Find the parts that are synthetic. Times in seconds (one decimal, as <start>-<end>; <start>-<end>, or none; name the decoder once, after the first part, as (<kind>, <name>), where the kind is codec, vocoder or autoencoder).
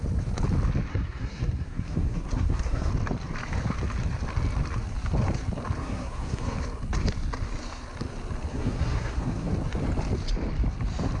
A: 0.9-2.9 (codec, SNAC); 5.8-6.6; 8.5-9.5